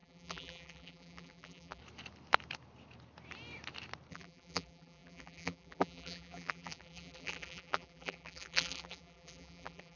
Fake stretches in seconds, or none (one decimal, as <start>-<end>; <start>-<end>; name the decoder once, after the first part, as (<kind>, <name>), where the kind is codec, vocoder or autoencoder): 0.0-1.8 (vocoder, BigVGAN v2); 4.1-10.0